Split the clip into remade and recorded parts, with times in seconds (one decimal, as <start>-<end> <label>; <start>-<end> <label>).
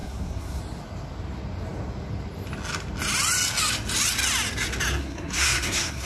0.0-0.6 remade; 0.6-5.0 recorded; 5.0-6.1 remade